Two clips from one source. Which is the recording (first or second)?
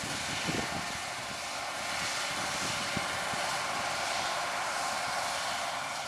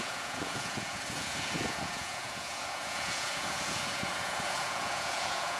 first